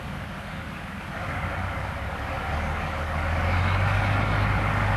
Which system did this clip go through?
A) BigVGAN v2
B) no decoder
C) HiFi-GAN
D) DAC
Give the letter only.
D